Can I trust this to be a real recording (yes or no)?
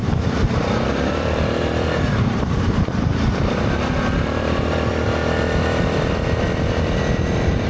no